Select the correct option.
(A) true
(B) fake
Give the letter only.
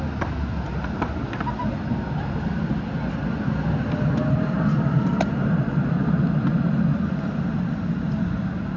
A